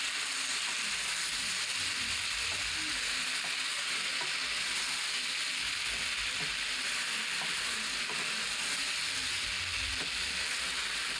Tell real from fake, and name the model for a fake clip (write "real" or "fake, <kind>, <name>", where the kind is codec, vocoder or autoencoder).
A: real